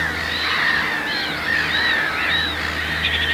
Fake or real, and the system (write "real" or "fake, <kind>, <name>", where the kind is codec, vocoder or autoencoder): fake, vocoder, BigVGAN v2